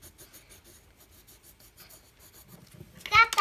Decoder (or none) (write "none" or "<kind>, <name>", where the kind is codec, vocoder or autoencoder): none